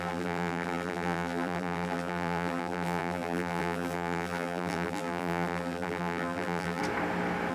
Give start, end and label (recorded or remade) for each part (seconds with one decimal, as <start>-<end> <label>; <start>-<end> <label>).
0.0-6.8 remade; 6.8-7.5 recorded